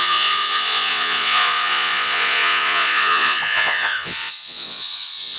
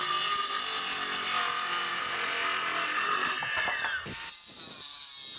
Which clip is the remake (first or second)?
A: first